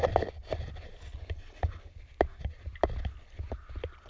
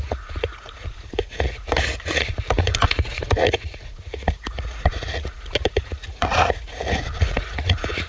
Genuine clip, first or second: first